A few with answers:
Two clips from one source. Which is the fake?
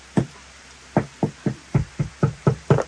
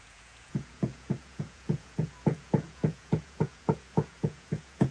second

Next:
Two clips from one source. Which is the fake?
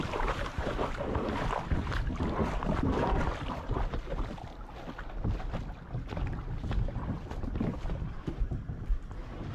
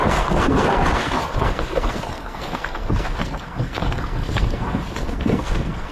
second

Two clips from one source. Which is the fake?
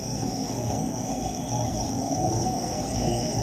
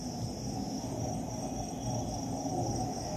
first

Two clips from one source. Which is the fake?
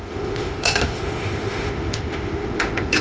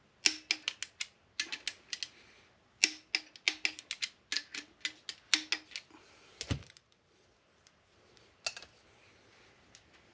first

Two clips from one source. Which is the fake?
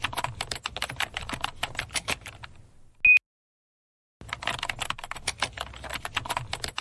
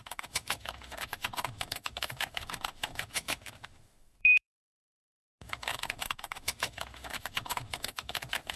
second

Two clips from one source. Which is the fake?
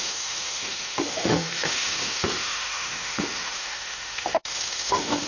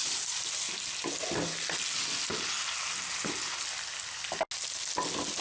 first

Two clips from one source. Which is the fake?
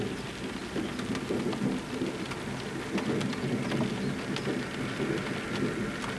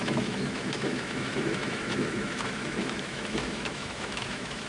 second